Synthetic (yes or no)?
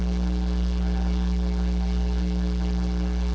yes